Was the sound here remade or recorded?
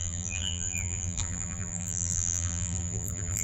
remade